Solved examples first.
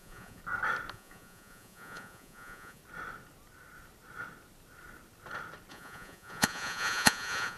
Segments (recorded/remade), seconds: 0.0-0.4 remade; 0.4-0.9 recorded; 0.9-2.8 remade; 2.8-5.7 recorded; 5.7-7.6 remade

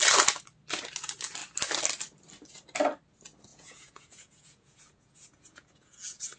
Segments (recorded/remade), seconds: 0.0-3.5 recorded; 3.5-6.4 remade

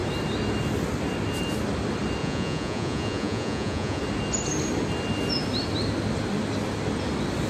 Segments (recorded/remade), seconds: 0.0-2.2 recorded; 2.2-4.0 remade; 4.0-7.5 recorded

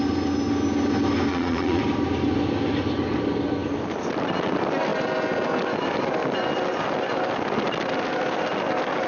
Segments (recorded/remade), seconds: 0.0-1.3 recorded; 1.3-1.8 remade; 1.8-9.1 recorded

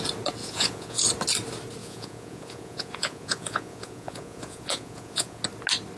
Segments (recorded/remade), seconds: 0.0-0.4 recorded; 0.4-1.0 remade; 1.0-1.8 recorded; 1.8-5.4 remade; 5.4-6.0 recorded

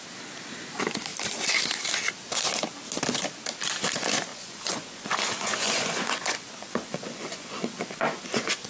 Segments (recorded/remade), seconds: 0.0-4.3 recorded; 4.3-8.7 remade

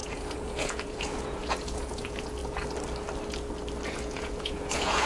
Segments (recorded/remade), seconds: 0.0-2.4 remade; 2.4-3.9 recorded; 3.9-5.1 remade

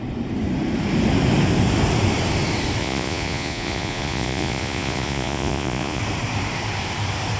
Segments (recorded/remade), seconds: 0.0-2.8 recorded; 2.8-6.0 remade; 6.0-7.4 recorded